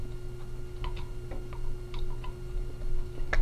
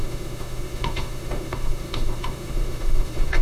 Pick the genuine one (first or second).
first